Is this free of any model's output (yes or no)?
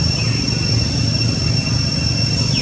yes